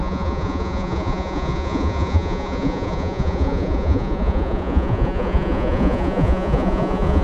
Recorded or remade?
remade